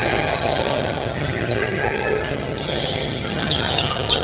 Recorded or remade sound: remade